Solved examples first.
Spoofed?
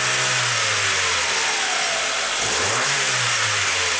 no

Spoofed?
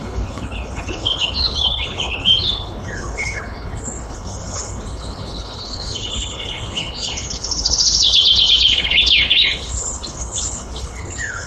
yes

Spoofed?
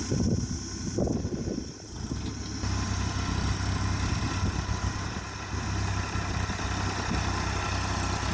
no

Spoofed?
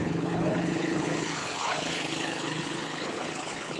yes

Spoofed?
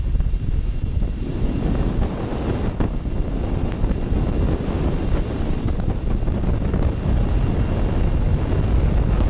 no